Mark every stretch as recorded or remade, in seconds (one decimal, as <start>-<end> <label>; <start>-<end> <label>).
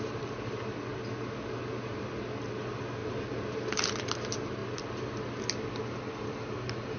0.0-3.0 recorded; 3.0-4.0 remade; 4.0-7.0 recorded